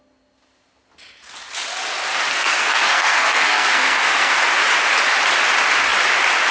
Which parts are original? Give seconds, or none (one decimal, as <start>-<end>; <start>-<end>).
0.0-2.3; 4.4-6.5